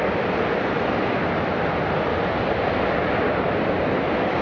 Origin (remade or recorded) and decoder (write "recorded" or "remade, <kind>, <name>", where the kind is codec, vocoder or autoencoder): recorded